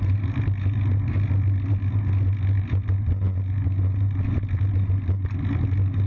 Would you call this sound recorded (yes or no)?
yes